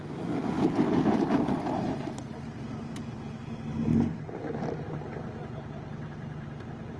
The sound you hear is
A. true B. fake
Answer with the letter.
A